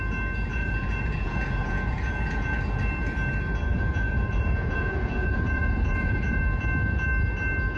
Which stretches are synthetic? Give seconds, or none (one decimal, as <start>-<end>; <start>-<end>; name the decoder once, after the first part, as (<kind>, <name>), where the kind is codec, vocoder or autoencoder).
0.5-2.6 (vocoder, Vocos); 3.7-6.4